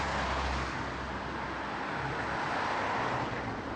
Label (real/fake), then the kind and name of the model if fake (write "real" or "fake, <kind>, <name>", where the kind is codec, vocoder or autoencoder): real